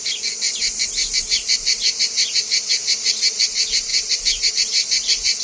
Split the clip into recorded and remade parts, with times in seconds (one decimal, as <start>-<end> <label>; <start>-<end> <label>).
0.0-5.4 recorded